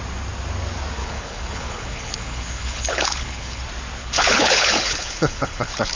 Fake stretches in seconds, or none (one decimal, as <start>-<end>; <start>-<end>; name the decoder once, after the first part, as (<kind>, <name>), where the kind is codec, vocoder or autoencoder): 1.0-3.6 (codec, HILCodec); 4.0-6.0